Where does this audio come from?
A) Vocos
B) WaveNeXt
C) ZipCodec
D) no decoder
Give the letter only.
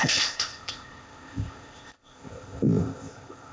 C